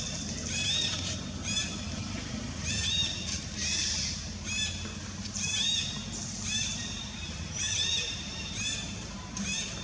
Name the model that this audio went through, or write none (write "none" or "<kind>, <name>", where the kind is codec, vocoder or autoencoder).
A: vocoder, BigVGAN v2